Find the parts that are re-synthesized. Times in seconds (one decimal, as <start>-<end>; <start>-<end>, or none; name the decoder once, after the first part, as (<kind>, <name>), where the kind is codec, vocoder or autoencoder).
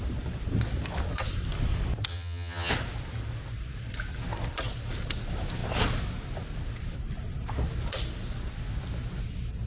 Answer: 2.1-2.7 (vocoder, HiFi-GAN)